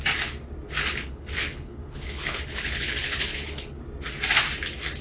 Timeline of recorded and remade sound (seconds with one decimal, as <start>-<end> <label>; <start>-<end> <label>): 0.0-0.8 recorded; 0.8-3.8 remade; 3.8-5.0 recorded